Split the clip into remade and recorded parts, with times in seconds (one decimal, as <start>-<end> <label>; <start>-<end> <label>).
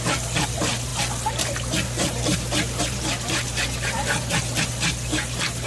0.0-5.7 recorded